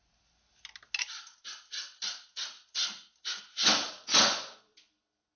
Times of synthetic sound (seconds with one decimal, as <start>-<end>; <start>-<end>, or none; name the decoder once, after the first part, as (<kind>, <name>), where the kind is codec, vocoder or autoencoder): 3.3-5.4 (vocoder, Vocos)